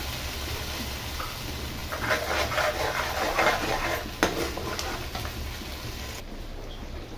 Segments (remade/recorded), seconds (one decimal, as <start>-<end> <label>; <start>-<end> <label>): 0.0-7.2 recorded